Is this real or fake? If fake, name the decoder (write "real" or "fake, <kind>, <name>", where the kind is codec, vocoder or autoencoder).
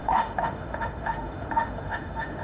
fake, autoencoder, DAC-VAE